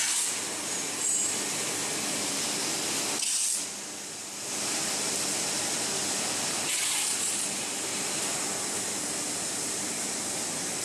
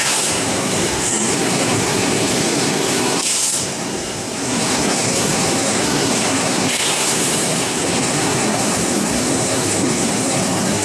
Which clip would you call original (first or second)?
first